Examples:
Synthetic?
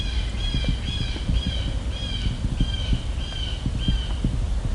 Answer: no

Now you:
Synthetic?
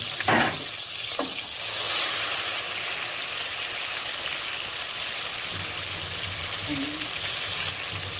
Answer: no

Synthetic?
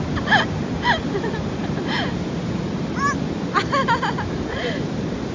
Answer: no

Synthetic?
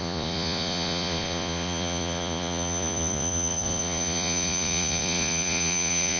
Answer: yes